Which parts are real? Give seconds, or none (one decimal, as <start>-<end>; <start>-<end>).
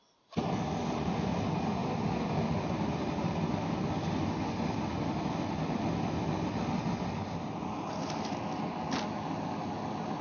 0.0-1.8; 3.5-10.2